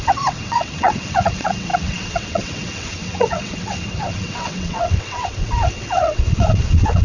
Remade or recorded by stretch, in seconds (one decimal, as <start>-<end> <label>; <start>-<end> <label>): 0.0-7.0 remade